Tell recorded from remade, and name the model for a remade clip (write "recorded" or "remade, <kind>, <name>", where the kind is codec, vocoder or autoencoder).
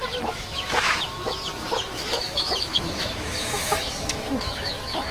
remade, autoencoder, DAC-VAE